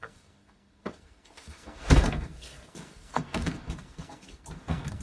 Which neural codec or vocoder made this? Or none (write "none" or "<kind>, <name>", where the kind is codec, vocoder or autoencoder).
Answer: codec, SNAC